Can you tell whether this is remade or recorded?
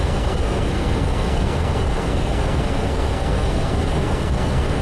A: remade